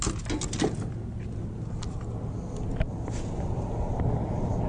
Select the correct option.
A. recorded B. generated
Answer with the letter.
A